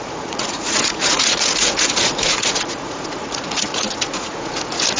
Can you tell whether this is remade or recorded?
remade